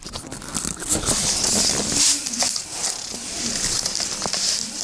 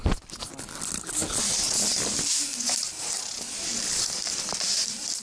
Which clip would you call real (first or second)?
second